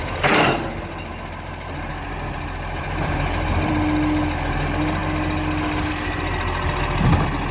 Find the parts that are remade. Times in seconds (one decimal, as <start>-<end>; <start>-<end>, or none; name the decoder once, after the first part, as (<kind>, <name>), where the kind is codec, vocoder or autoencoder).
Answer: 1.9-3.7 (vocoder, BigVGAN v2)

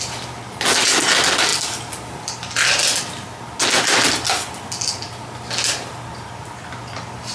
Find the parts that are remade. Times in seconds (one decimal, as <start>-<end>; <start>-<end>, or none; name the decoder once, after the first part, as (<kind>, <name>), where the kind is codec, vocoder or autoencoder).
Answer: none

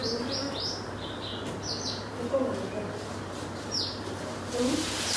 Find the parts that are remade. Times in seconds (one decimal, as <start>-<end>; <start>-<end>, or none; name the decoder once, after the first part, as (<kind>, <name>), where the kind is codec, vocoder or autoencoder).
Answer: 0.0-1.3 (vocoder, BigVGAN v2); 1.8-5.2

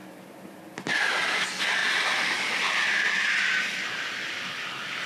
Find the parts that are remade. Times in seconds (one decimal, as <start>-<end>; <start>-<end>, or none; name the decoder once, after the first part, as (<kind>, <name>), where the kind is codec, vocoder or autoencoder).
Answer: 0.0-1.1 (vocoder, BigVGAN v2)

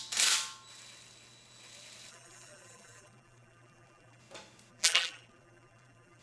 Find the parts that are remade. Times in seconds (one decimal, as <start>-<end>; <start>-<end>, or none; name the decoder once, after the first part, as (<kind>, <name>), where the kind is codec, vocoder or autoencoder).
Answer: 2.1-4.2 (vocoder, BigVGAN v2); 4.7-6.2

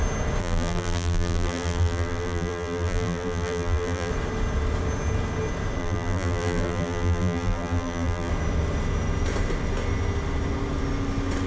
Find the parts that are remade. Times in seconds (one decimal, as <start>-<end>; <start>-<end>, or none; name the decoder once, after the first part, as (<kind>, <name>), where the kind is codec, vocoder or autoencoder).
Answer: 0.4-4.1 (vocoder, BigVGAN v2); 5.8-8.3